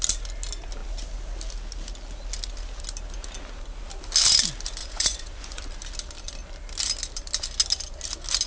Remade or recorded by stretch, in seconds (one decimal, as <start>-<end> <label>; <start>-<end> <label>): 0.0-4.8 recorded; 4.8-5.6 remade; 5.6-8.5 recorded

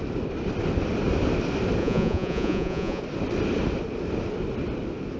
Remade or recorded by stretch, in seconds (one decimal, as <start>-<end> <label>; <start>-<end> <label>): 0.0-1.8 recorded; 1.8-3.0 remade; 3.0-5.2 recorded